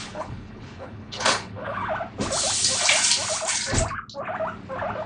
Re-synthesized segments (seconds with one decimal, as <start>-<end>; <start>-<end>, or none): 0.0-1.8